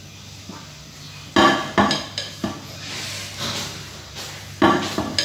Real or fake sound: real